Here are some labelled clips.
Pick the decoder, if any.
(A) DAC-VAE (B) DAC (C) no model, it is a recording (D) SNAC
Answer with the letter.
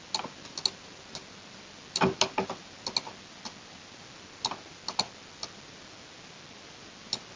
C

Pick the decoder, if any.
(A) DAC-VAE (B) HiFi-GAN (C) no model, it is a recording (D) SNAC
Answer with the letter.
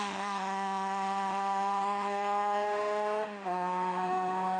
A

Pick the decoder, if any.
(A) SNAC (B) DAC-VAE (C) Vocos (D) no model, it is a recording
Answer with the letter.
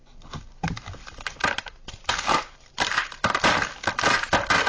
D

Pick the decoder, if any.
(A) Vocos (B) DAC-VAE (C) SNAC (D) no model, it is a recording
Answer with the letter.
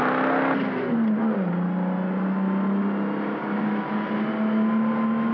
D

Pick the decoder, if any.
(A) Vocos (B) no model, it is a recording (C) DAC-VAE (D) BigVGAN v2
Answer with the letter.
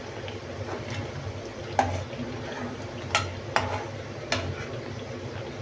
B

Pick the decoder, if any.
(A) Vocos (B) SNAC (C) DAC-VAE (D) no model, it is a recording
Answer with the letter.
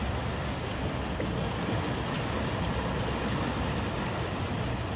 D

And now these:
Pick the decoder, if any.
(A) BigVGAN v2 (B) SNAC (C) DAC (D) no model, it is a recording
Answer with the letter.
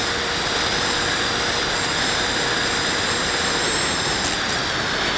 D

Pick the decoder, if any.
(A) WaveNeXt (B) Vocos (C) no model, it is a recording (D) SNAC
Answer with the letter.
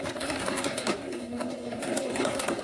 D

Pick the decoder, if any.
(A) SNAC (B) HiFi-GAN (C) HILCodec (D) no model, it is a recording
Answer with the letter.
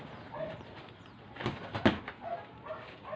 D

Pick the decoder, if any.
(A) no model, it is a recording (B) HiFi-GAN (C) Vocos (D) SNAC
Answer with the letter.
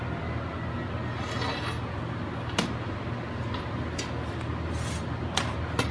A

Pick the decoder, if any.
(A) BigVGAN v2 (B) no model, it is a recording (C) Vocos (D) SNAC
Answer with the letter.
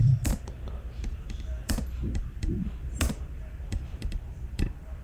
A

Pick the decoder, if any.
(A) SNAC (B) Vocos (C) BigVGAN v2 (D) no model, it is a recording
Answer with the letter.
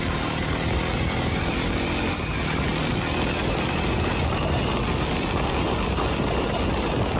D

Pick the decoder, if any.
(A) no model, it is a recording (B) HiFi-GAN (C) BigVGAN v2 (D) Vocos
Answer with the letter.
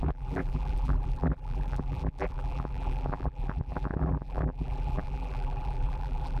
C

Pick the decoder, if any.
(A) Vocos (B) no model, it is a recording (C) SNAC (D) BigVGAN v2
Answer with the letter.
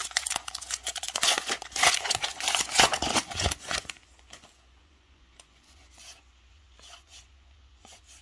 A